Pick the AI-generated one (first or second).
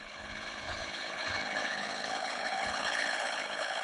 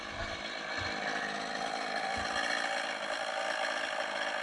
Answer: first